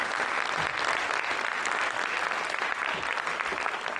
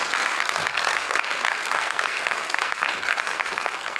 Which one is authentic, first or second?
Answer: first